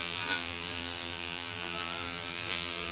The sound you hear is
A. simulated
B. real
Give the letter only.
A